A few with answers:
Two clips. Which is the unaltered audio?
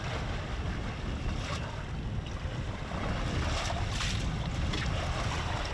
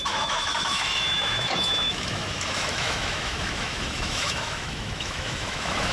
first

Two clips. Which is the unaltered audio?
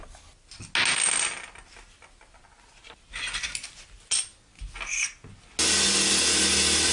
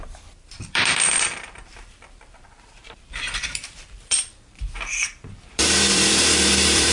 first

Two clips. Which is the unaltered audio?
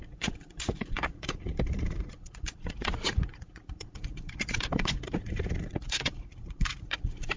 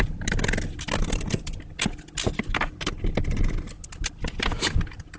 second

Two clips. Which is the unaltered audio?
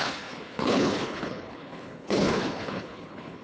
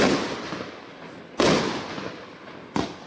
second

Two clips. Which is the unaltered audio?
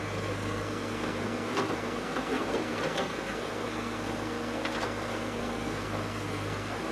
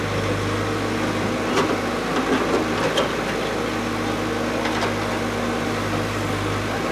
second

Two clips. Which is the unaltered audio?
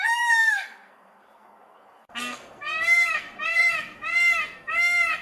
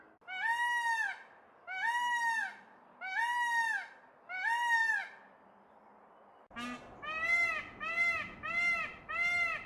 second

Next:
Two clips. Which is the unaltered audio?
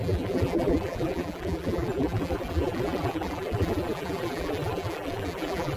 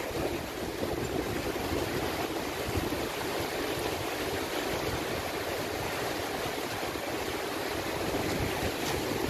second